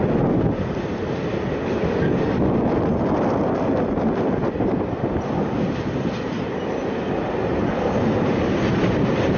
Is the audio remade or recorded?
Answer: recorded